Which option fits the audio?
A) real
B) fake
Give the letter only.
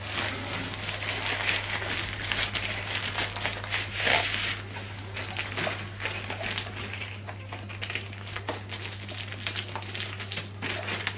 A